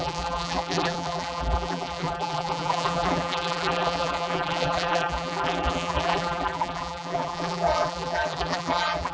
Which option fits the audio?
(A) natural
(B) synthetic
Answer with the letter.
B